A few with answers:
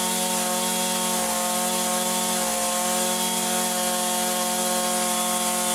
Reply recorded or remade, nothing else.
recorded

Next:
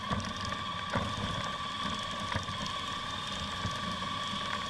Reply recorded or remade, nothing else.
recorded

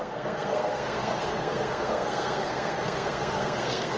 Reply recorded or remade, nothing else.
remade